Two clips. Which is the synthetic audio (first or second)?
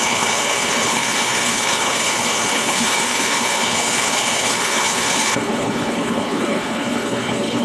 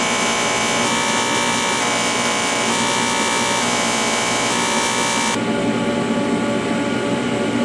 first